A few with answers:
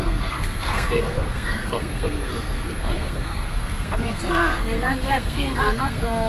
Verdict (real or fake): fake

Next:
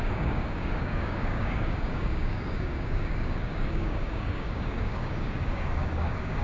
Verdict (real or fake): fake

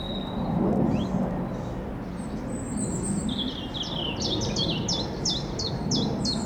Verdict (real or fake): real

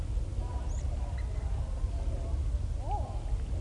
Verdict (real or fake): real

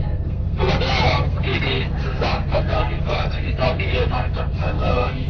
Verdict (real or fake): fake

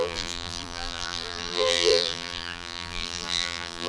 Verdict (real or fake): fake